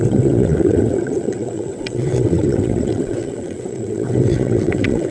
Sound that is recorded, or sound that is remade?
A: remade